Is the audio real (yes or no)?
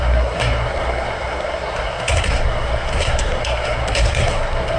no